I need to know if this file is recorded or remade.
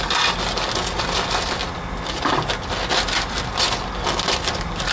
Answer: recorded